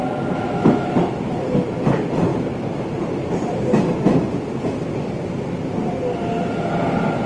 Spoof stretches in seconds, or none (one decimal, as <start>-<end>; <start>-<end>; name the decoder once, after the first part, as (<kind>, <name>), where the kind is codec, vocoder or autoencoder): 0.0-1.3 (autoencoder, DAC-VAE)